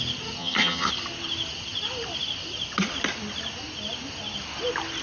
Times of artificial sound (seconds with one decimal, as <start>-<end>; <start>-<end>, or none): 0.4-0.9

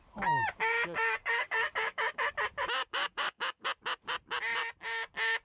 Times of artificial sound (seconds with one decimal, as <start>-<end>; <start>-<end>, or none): 1.2-2.3; 2.8-3.7

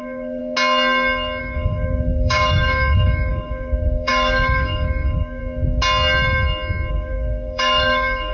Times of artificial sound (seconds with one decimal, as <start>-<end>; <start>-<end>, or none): 0.0-0.4; 1.4-5.4; 6.9-8.3

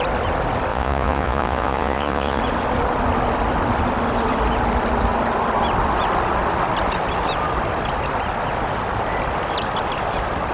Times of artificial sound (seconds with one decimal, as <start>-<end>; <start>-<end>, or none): 0.7-2.4